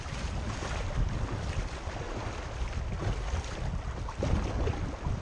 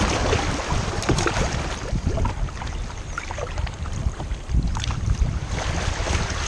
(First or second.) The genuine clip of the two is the first